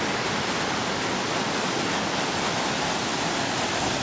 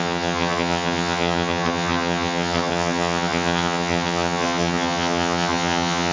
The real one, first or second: first